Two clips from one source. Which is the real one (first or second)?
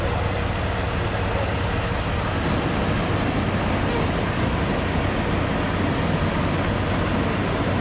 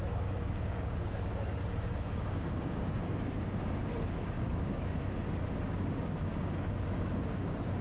first